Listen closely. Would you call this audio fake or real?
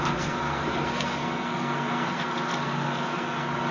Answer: fake